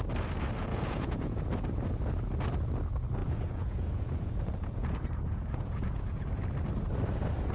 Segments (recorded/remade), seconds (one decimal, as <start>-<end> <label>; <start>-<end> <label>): 0.0-0.7 recorded; 0.7-1.4 remade; 1.4-3.2 recorded; 3.2-6.3 remade; 6.3-7.5 recorded